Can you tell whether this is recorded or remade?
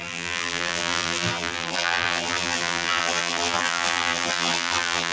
remade